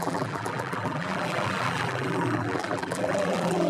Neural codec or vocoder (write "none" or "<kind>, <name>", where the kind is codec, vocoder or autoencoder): vocoder, BigVGAN v2